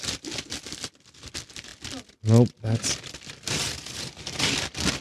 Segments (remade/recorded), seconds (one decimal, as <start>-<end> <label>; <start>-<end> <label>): 0.0-1.7 remade; 1.7-2.8 recorded; 2.8-5.0 remade